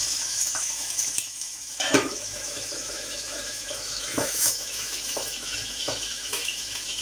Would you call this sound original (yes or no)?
no